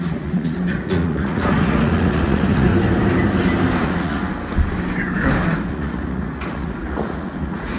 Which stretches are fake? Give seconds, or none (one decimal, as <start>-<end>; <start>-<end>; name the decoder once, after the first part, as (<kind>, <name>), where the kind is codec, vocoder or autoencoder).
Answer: 0.0-2.7 (vocoder, Vocos); 3.8-4.2; 5.7-7.8